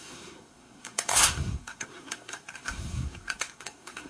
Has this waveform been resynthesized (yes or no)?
yes